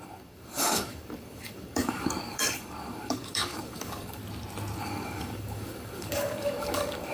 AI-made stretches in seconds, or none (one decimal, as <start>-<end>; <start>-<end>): 0.0-4.2; 4.8-7.1